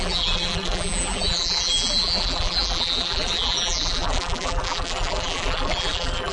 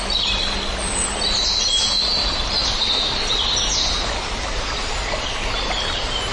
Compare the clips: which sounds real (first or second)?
second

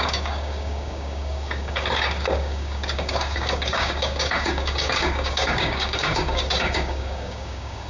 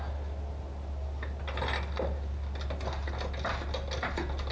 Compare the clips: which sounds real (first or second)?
second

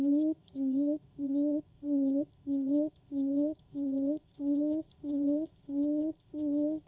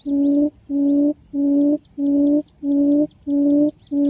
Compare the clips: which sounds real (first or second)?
second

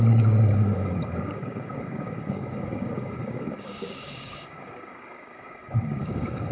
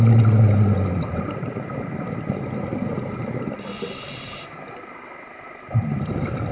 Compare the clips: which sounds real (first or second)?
second